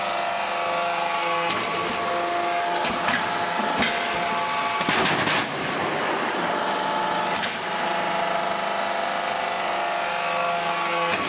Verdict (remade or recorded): recorded